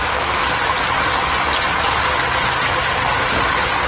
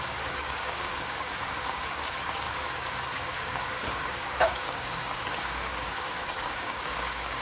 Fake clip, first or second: second